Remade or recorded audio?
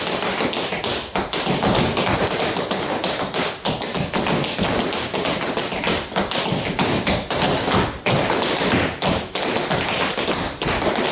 recorded